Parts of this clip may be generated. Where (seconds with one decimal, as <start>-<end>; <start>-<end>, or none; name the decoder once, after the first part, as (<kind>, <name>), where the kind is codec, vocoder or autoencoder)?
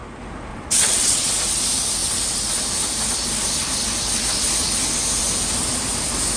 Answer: 0.5-1.3 (vocoder, WaveNeXt)